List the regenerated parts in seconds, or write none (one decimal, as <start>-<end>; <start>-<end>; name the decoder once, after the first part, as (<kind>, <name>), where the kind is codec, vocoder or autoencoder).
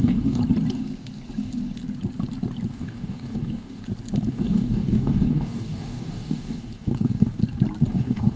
0.0-0.4 (codec, DAC); 2.7-3.8; 4.3-7.4; 7.9-8.4